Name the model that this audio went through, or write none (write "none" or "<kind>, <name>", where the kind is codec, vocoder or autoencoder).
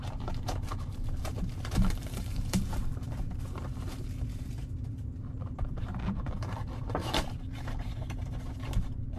vocoder, BigVGAN v2